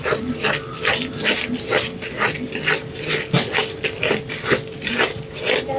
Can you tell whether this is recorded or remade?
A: recorded